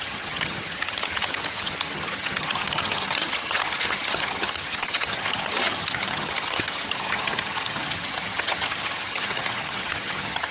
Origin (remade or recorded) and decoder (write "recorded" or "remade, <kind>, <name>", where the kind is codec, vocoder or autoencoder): remade, vocoder, HiFi-GAN